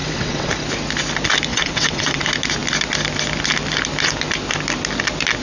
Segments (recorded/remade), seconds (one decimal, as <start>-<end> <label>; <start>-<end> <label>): 0.0-0.5 remade; 0.5-1.5 recorded; 1.5-2.2 remade; 2.2-5.4 recorded